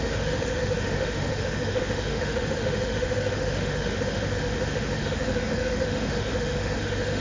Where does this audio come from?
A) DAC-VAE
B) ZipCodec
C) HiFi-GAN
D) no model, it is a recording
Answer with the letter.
A